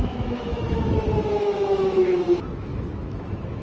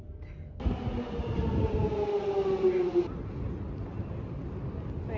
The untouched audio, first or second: second